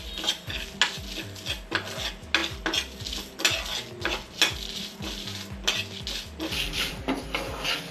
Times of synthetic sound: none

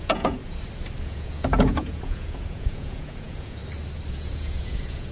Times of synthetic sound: 0.0-0.4 (vocoder, Vocos); 1.0-3.6; 4.1-5.1

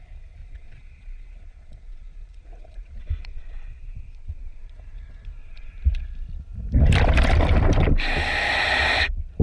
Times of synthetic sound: 0.4-5.7 (vocoder, Vocos)

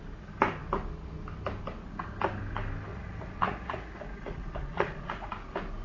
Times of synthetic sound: 2.9-5.3 (vocoder, Vocos)

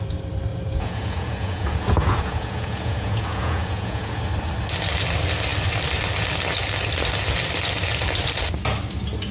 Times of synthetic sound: 0.5-4.2 (vocoder, Vocos)

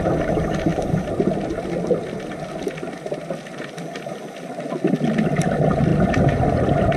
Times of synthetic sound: none

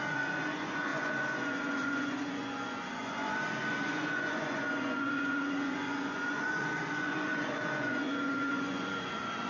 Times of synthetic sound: 0.0-9.5 (vocoder, Vocos)